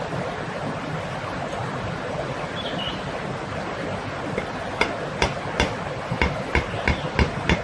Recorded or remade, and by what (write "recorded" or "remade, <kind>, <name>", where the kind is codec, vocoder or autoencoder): recorded